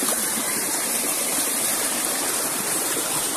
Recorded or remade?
remade